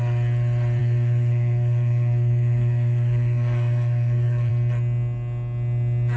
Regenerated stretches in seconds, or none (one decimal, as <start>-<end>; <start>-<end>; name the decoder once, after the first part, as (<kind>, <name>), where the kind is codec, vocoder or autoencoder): 0.8-4.5 (codec, SNAC)